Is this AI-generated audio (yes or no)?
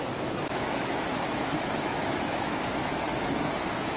yes